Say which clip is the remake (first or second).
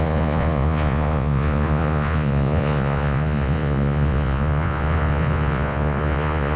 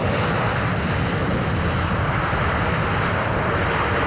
first